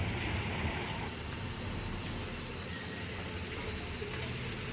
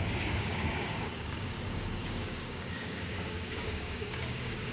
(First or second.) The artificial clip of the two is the second